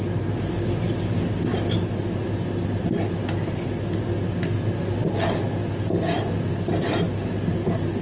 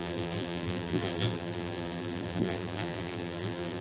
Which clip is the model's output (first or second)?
second